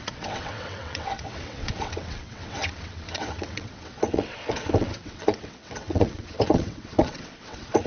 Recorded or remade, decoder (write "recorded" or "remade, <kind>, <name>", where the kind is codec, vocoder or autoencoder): remade, vocoder, WaveNeXt